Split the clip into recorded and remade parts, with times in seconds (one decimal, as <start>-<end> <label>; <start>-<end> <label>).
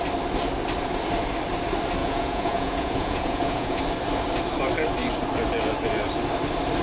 0.0-2.0 recorded; 2.0-3.8 remade; 3.8-6.8 recorded